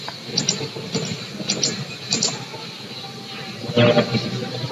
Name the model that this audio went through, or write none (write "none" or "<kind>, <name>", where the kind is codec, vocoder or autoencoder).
none